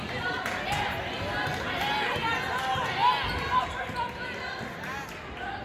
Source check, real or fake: real